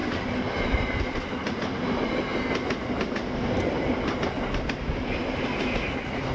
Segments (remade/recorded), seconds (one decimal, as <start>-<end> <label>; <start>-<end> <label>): 0.0-6.3 recorded